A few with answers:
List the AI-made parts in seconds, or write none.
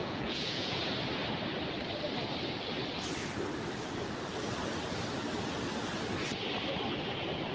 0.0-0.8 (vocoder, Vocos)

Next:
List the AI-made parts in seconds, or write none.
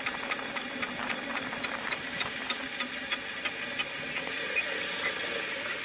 none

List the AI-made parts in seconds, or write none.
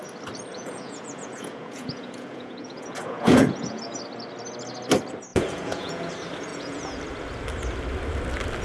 0.5-4.0 (vocoder, Vocos); 5.3-6.1; 6.5-7.0